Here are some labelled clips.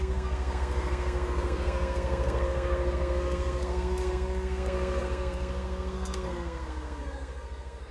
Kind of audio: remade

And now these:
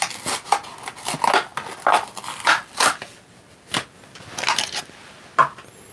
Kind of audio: recorded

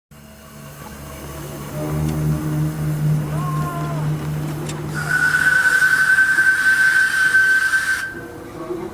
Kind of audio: recorded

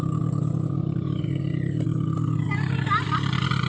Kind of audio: recorded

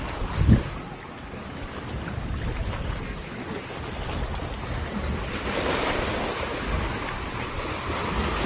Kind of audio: recorded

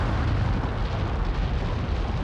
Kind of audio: recorded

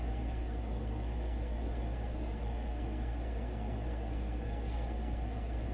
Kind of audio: remade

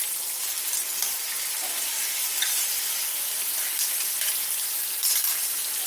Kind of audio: recorded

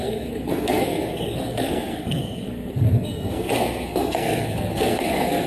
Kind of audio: remade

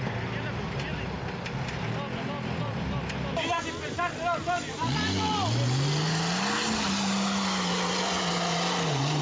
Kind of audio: recorded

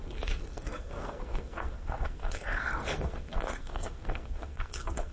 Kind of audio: remade